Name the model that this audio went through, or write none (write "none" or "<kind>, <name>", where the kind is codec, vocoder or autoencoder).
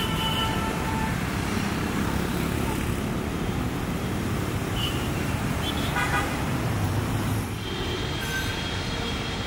vocoder, BigVGAN v2